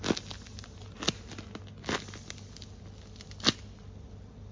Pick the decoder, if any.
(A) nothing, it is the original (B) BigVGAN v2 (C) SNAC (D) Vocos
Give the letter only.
A